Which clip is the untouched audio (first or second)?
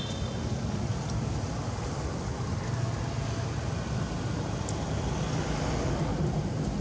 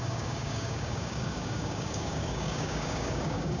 first